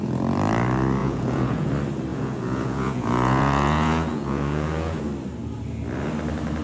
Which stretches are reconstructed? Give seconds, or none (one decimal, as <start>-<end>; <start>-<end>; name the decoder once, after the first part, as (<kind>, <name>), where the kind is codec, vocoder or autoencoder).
1.0-1.7 (vocoder, Vocos); 2.1-5.0